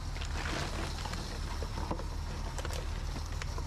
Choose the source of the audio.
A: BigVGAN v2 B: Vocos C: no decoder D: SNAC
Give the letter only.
C